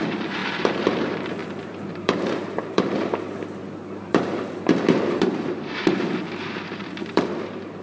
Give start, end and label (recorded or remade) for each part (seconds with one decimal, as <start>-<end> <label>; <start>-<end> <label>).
0.0-3.1 remade; 3.1-4.1 recorded; 4.1-7.8 remade